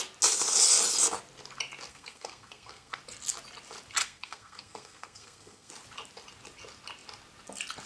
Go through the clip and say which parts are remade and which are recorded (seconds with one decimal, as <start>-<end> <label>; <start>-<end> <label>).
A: 0.0-1.9 recorded; 1.9-3.0 remade; 3.0-4.0 recorded; 4.0-5.7 remade; 5.7-7.9 recorded